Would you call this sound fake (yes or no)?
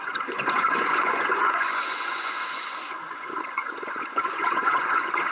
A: yes